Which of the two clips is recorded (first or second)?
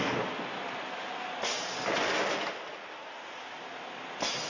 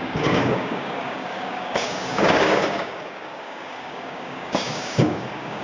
first